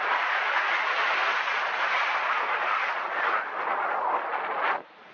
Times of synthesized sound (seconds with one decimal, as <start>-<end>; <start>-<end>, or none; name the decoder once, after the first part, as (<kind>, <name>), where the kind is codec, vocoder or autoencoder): none